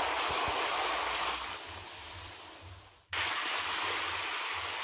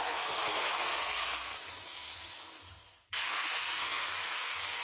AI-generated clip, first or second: second